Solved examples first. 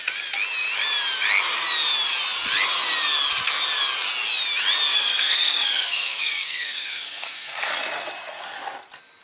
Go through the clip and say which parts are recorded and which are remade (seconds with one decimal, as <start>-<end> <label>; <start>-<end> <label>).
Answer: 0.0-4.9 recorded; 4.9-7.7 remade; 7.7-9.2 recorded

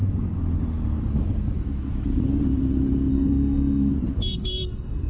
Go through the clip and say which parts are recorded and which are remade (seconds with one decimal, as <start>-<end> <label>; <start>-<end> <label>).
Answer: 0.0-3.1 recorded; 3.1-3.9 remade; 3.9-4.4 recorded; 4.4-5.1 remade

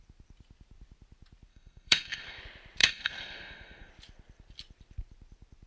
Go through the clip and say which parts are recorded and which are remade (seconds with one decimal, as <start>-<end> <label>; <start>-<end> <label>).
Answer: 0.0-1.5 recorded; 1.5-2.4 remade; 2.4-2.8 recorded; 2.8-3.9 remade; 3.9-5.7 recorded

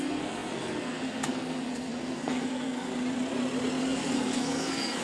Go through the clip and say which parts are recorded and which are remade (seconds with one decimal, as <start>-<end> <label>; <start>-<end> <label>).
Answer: 0.0-2.9 remade; 2.9-3.8 recorded; 3.8-5.0 remade

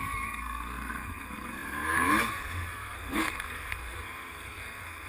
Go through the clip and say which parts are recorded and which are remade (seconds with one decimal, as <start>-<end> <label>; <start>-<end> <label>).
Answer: 0.0-5.1 remade

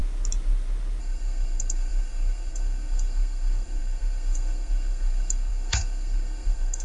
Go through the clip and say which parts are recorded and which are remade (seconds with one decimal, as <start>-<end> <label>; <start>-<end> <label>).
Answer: 0.0-1.0 recorded; 1.0-6.8 remade